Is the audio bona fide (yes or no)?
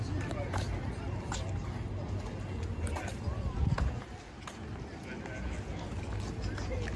yes